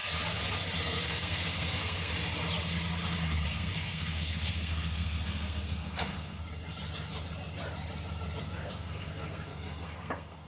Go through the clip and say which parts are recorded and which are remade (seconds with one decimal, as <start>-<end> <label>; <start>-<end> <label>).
0.0-0.8 recorded; 0.8-2.1 remade; 2.1-3.5 recorded; 3.5-6.4 remade; 6.4-8.4 recorded; 8.4-10.5 remade